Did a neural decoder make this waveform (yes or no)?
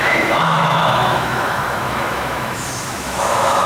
yes